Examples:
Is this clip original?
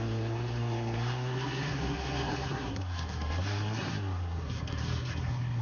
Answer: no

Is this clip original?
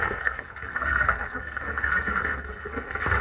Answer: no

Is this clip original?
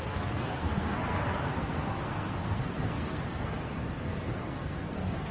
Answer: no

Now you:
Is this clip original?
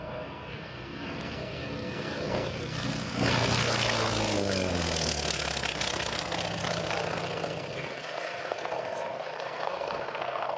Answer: no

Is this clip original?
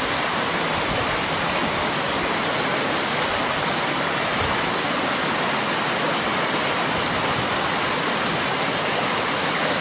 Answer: yes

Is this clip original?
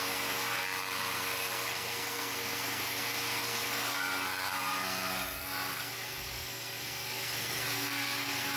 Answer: no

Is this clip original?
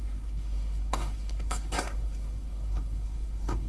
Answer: no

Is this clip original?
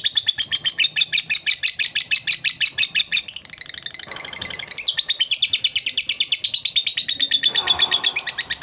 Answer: yes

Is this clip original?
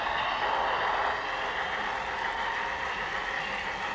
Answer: yes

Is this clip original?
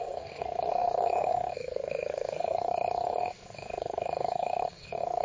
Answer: no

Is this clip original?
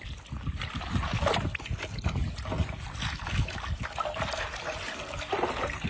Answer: yes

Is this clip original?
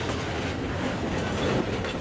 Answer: yes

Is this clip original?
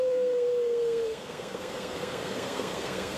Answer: no